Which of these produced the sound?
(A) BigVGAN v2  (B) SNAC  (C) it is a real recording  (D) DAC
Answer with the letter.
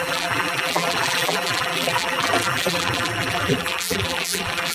A